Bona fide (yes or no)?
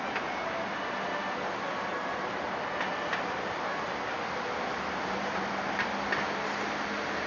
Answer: yes